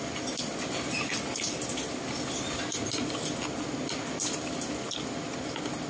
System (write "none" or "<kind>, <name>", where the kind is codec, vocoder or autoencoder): none